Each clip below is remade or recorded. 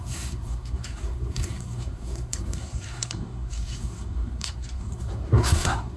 remade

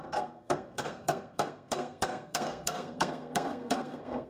remade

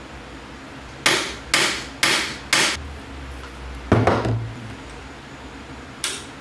recorded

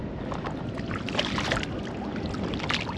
recorded